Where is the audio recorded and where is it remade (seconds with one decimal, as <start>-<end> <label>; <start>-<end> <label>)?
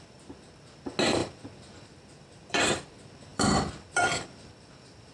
0.0-1.2 recorded; 1.2-2.9 remade; 2.9-3.3 recorded; 3.3-5.1 remade